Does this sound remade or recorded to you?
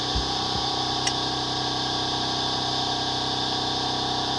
recorded